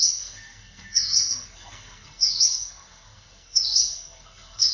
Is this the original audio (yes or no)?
no